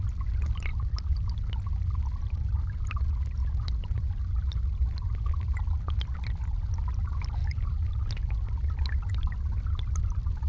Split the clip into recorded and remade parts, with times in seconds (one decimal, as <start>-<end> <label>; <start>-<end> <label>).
0.0-0.7 recorded; 0.7-1.4 remade; 1.4-3.4 recorded; 3.4-4.1 remade; 4.1-7.4 recorded; 7.4-8.5 remade; 8.5-10.5 recorded